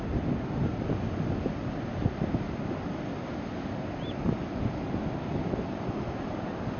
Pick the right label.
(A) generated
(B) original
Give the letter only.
B